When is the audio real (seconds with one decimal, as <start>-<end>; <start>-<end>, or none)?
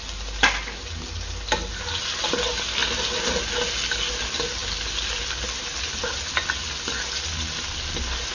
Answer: 0.0-8.3